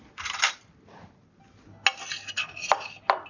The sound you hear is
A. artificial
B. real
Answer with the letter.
B